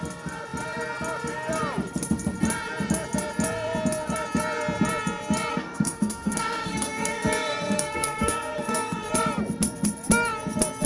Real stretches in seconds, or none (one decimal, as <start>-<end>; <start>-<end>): 0.0-5.5; 9.1-10.9